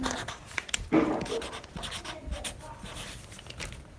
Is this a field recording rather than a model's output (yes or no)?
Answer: yes